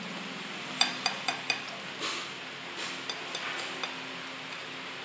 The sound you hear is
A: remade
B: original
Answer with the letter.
B